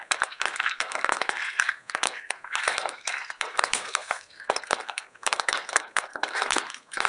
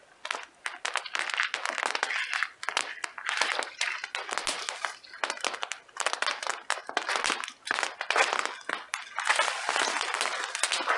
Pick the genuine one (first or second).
second